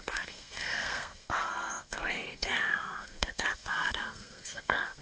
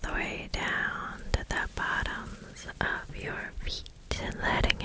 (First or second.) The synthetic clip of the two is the first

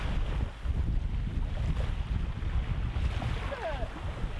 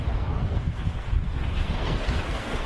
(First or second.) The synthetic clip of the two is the second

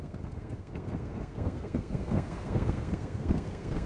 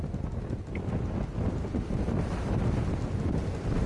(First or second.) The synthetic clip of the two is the first